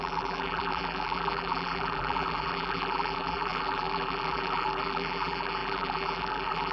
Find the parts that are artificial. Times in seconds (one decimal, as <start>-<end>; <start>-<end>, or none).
0.0-6.7